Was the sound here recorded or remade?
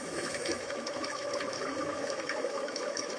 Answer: remade